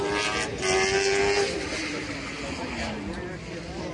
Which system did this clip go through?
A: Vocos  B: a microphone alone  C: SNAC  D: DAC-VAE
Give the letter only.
B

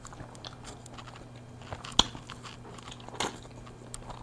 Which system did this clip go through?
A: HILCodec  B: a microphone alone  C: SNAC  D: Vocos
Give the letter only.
B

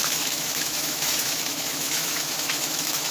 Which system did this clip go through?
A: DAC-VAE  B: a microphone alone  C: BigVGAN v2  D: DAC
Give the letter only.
A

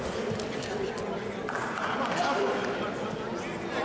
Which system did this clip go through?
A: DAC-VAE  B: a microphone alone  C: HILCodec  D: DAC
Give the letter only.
B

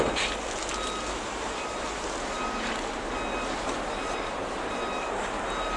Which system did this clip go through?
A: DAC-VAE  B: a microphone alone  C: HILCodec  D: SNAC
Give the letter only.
B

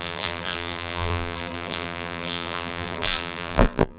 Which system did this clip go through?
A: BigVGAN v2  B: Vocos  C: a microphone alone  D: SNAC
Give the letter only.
A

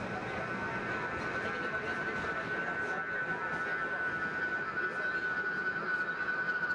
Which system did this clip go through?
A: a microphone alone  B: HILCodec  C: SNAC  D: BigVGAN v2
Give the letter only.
A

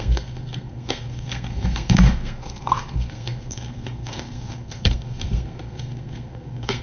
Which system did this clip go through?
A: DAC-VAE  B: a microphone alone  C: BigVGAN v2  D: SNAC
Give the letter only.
D